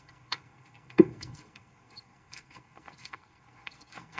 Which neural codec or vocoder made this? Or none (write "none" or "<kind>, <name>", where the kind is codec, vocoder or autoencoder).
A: codec, SNAC